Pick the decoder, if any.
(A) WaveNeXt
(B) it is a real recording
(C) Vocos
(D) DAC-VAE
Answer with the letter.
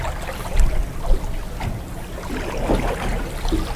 B